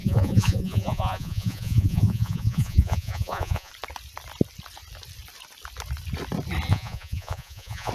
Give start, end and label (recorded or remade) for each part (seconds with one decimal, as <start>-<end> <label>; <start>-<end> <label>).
0.0-3.7 remade; 3.7-6.7 recorded; 6.7-7.9 remade